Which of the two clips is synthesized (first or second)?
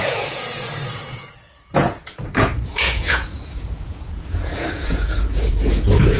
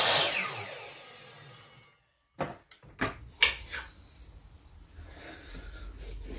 first